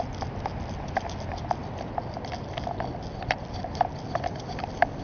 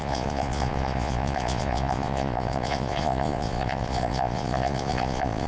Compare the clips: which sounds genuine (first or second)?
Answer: first